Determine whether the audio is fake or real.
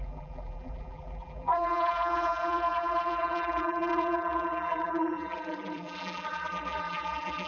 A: fake